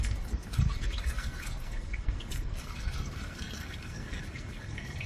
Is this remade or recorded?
remade